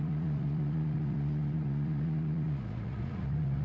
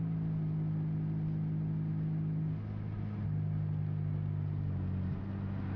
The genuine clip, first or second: second